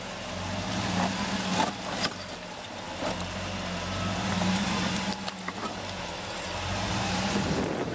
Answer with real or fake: real